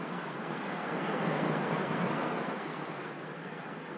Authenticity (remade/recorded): remade